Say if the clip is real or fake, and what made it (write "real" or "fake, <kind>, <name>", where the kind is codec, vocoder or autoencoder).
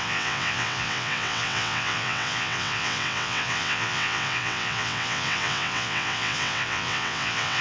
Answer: fake, vocoder, WaveNeXt